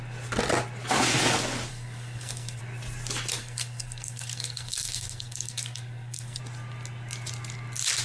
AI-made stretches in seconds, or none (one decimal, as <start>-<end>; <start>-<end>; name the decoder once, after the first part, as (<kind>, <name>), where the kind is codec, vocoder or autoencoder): 1.7-2.6 (codec, SNAC); 3.4-6.4